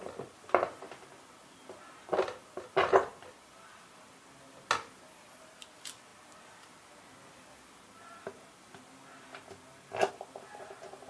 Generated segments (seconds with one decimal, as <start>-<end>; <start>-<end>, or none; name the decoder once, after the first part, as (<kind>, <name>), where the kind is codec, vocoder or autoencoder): none